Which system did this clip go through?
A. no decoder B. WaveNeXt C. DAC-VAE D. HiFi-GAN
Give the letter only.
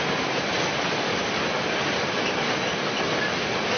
A